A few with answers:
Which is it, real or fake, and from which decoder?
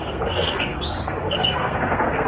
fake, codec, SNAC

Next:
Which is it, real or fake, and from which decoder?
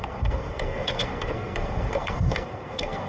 fake, codec, SNAC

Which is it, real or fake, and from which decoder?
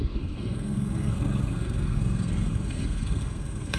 fake, codec, SNAC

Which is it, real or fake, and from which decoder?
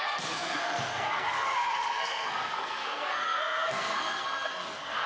fake, codec, SNAC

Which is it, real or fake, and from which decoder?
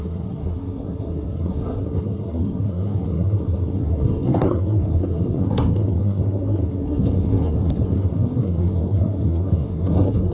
fake, codec, SNAC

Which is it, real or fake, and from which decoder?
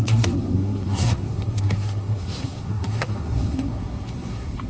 fake, codec, SNAC